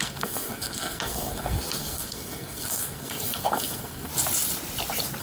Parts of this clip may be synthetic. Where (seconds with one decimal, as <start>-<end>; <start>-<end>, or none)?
0.0-4.1